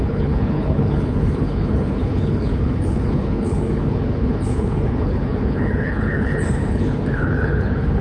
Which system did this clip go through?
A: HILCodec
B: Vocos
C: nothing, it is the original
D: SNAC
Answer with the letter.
A